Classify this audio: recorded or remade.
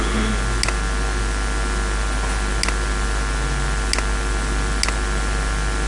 recorded